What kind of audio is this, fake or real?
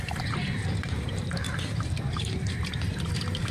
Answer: fake